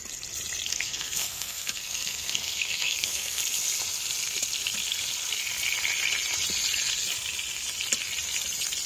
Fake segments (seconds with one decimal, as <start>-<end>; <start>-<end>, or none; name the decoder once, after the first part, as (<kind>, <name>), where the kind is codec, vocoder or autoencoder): 0.7-3.4 (codec, SNAC)